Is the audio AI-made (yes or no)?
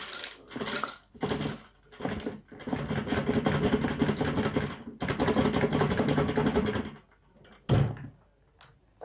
no